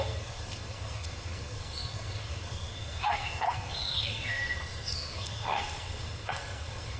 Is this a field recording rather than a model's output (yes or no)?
no